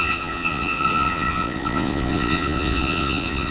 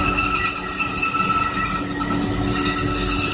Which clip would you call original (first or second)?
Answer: second